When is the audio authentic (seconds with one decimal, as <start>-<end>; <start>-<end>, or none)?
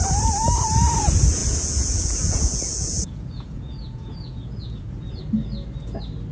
0.0-1.4; 5.2-6.3